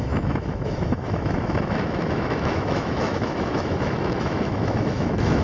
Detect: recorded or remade remade